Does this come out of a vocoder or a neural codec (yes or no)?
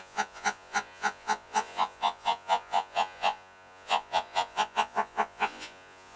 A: yes